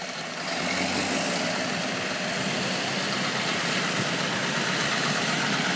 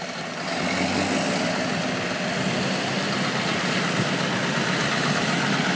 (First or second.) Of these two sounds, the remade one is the first